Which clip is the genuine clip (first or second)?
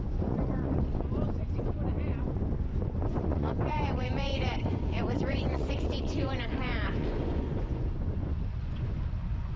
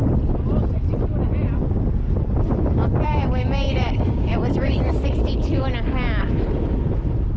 second